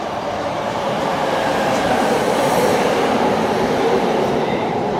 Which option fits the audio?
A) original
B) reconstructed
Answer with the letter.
B